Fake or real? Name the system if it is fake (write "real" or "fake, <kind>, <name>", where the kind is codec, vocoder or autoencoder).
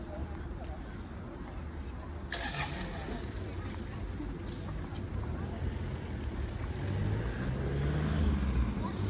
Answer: real